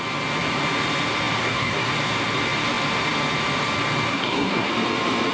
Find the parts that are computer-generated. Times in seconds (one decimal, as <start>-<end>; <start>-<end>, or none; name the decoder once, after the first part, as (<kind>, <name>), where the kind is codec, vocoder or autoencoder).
1.4-1.9 (codec, SNAC); 4.1-4.7